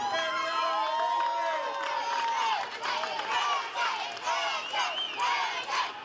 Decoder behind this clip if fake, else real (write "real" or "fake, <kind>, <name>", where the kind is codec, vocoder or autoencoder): real